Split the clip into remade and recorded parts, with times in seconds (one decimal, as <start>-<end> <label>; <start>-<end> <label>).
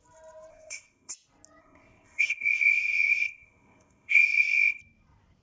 0.0-0.5 recorded; 0.5-1.1 remade; 1.1-1.6 recorded; 1.6-4.8 remade; 4.8-5.4 recorded